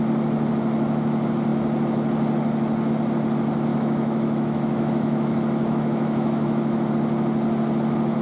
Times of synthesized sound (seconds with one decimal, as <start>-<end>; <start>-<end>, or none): 3.7-6.9